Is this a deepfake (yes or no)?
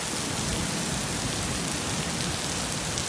no